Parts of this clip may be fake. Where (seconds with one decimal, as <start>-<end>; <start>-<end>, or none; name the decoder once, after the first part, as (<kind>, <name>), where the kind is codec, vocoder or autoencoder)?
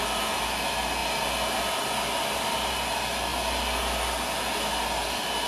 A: none